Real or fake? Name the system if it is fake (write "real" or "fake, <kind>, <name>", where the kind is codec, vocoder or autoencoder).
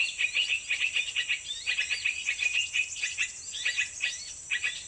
real